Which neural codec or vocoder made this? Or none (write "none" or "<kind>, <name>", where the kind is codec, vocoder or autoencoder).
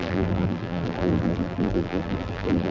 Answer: vocoder, BigVGAN v2